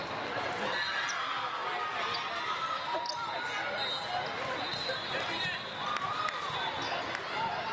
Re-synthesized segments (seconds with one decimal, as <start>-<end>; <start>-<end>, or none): none